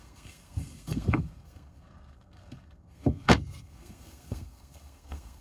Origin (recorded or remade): remade